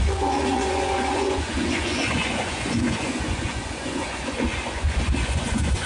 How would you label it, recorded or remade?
remade